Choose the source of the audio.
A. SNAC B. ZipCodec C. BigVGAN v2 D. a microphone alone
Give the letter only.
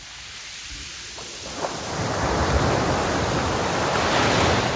D